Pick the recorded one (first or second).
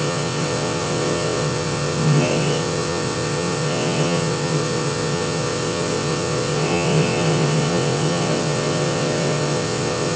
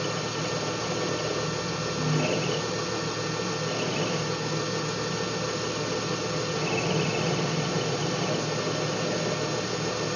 second